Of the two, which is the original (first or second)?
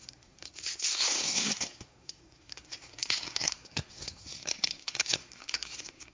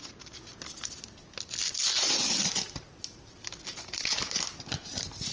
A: second